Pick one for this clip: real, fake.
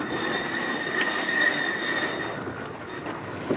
real